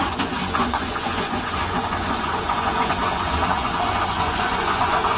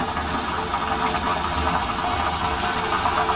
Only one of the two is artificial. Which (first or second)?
first